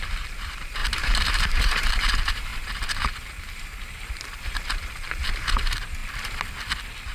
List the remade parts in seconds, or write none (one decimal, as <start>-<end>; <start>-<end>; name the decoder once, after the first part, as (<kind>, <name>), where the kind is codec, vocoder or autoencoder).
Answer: 0.0-2.5 (vocoder, BigVGAN v2); 3.4-6.0